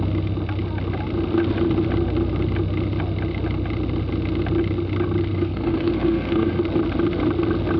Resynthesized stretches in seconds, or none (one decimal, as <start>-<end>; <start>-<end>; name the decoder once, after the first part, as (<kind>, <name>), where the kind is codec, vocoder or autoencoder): 5.3-6.6 (codec, SNAC)